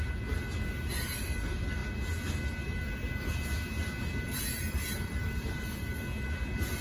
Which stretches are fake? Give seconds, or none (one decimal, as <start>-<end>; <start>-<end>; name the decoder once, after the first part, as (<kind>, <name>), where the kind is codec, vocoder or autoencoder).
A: none